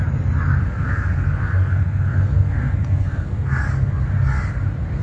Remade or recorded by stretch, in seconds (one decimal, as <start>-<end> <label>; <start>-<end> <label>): 0.0-0.6 recorded; 0.6-3.6 remade; 3.6-5.0 recorded